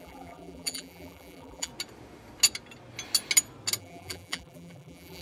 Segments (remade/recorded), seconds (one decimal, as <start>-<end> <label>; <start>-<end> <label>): 0.0-1.7 remade; 1.7-3.8 recorded; 3.8-5.2 remade